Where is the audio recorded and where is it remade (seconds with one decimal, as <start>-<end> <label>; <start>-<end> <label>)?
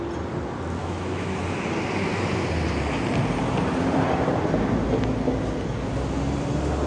0.0-0.8 recorded; 0.8-1.4 remade; 1.4-6.9 recorded